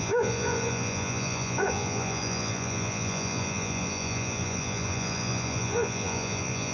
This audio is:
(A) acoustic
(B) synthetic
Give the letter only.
B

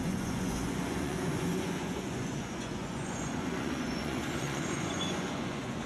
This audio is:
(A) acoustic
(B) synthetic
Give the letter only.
B